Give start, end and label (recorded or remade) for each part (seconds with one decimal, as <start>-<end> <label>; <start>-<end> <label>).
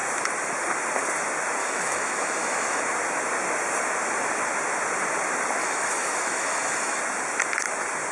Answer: 0.0-1.6 recorded; 1.6-2.8 remade; 2.8-5.6 recorded; 5.6-7.0 remade; 7.0-8.1 recorded